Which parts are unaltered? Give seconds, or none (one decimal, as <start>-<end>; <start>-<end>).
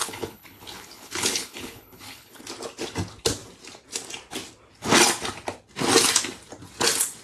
2.4-7.2